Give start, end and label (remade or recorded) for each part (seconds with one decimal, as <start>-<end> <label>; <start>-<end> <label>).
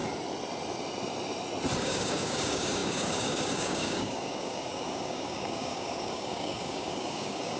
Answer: 0.0-1.8 recorded; 1.8-7.6 remade